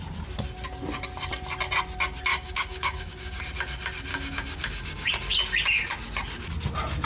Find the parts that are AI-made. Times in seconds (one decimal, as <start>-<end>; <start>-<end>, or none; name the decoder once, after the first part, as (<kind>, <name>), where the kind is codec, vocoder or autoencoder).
2.3-3.4 (codec, DAC); 4.1-5.1